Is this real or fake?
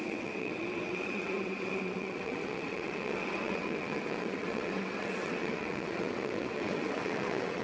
fake